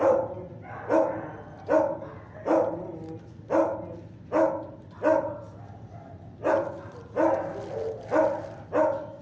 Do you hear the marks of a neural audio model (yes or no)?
no